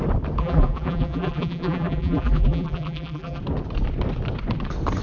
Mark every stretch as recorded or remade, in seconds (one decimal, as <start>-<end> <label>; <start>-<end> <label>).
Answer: 0.0-0.4 recorded; 0.4-3.4 remade; 3.4-5.0 recorded